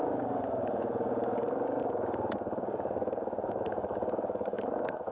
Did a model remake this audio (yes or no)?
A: yes